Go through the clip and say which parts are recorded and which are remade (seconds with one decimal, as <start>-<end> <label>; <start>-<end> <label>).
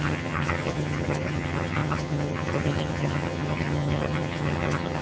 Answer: 0.0-5.0 remade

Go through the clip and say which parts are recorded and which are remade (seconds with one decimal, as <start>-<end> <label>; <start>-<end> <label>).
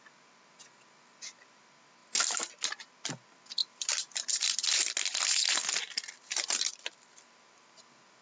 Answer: 0.0-3.6 recorded; 3.6-4.3 remade; 4.3-8.2 recorded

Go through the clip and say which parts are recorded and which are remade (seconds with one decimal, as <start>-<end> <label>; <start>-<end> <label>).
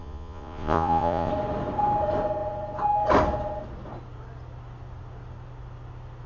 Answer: 0.0-1.3 remade; 1.3-6.3 recorded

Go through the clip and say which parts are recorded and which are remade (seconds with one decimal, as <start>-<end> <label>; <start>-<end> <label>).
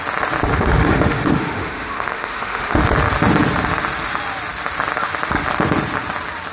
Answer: 0.0-0.5 recorded; 0.5-2.8 remade; 2.8-6.5 recorded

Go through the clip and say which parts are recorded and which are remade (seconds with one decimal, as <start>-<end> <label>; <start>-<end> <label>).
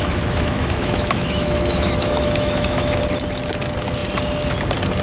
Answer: 0.0-3.0 remade; 3.0-5.0 recorded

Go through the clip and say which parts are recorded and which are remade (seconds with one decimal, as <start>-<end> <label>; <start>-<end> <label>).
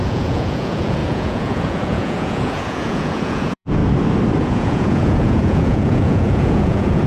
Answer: 0.0-3.8 remade; 3.8-4.4 recorded; 4.4-7.1 remade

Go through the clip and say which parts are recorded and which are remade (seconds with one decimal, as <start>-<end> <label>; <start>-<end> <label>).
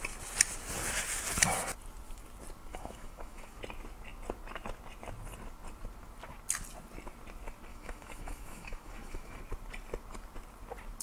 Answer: 0.0-2.7 recorded; 2.7-3.6 remade; 3.6-7.7 recorded; 7.7-9.4 remade; 9.4-11.0 recorded